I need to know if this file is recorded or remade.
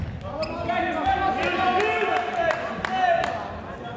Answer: recorded